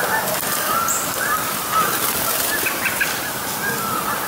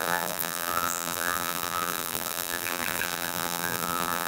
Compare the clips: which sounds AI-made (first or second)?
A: second